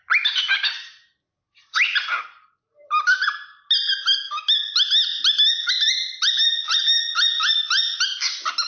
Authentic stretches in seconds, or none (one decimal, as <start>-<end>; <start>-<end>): 0.0-8.7